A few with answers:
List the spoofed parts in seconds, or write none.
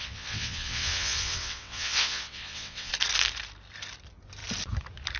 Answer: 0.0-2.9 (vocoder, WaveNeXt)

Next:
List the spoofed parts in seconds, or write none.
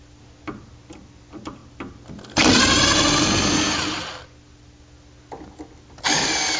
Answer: none